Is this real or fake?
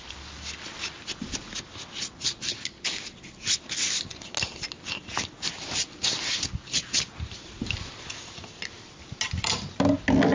real